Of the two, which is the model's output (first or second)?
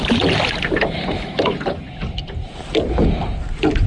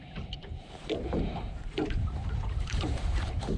second